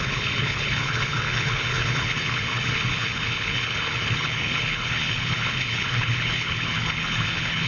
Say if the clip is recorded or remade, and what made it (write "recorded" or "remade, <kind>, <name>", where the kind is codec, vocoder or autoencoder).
remade, codec, HILCodec